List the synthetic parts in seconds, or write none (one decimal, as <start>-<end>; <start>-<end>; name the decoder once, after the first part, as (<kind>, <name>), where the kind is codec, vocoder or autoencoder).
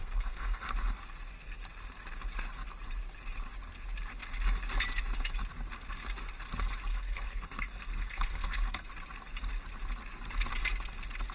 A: 0.0-0.6 (codec, SNAC); 6.9-8.9